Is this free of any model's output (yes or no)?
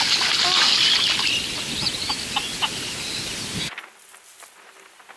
yes